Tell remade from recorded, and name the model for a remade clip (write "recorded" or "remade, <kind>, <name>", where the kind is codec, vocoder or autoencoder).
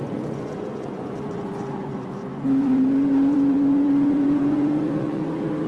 remade, vocoder, Vocos